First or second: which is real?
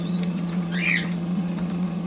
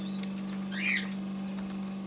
second